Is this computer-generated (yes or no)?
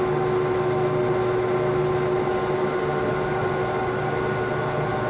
no